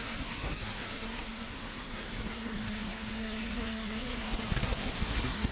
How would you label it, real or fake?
fake